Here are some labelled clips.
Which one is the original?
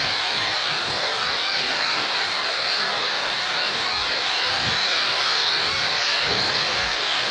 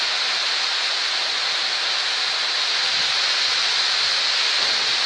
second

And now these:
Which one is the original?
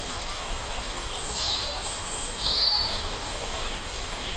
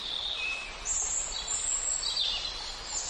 second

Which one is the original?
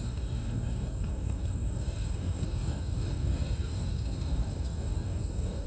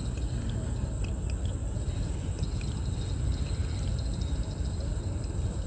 second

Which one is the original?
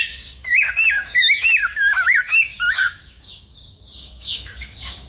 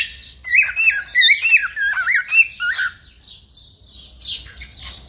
second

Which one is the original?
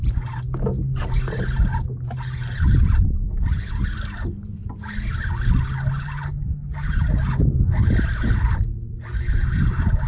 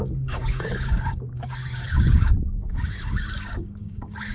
first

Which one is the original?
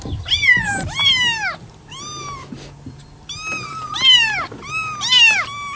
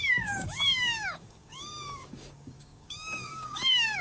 first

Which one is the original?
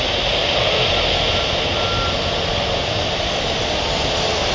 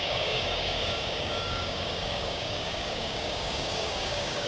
first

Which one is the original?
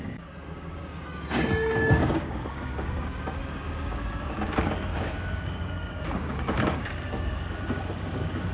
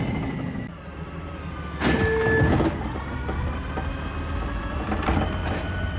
second